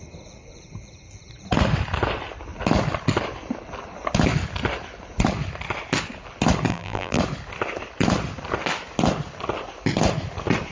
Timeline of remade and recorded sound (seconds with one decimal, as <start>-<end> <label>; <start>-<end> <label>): 0.0-6.7 recorded; 6.7-7.2 remade; 7.2-10.7 recorded